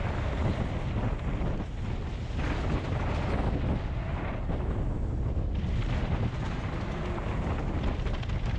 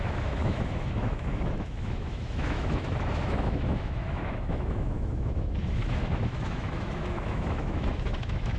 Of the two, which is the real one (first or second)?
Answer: first